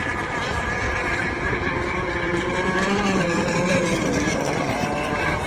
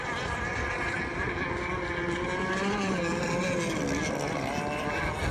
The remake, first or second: first